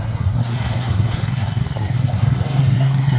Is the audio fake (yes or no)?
yes